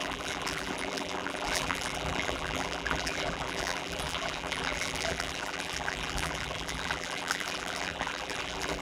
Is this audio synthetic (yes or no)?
yes